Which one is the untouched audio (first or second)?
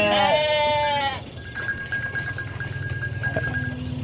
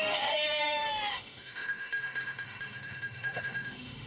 first